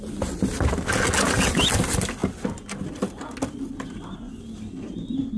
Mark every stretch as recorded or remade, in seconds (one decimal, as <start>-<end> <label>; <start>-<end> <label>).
0.0-5.4 recorded